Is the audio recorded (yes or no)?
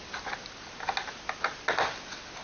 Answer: yes